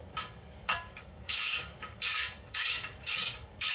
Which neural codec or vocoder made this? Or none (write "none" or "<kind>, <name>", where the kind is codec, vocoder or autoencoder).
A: codec, DAC